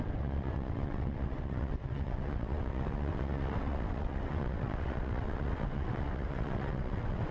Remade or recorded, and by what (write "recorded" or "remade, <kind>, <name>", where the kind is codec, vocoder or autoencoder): remade, vocoder, WaveNeXt